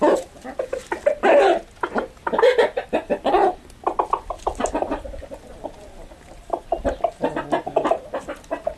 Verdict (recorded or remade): recorded